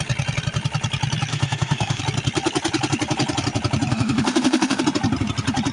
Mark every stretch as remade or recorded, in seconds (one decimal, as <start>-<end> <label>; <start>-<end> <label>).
0.0-1.3 recorded; 1.3-2.0 remade; 2.0-3.9 recorded; 3.9-4.8 remade; 4.8-5.7 recorded